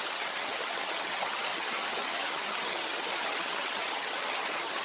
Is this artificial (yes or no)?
yes